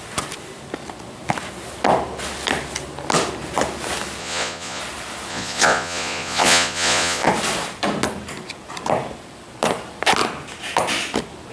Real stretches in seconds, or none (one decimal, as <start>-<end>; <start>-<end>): 0.0-4.2; 4.8-5.3; 7.3-11.5